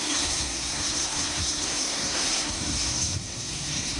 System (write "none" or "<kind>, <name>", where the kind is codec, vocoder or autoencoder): codec, SNAC